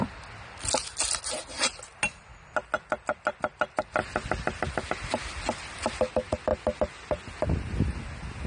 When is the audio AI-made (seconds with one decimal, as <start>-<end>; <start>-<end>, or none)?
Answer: none